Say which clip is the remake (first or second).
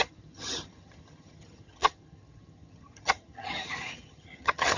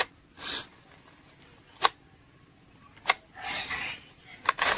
first